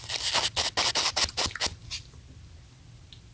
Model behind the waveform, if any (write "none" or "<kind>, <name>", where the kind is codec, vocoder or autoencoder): none